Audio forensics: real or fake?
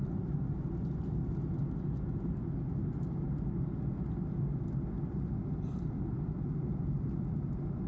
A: real